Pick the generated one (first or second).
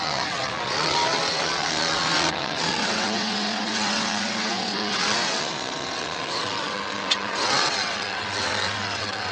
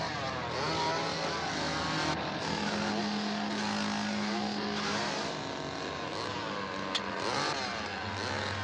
first